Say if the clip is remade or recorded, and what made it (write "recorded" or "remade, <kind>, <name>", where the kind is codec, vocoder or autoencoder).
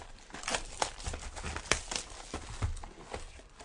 recorded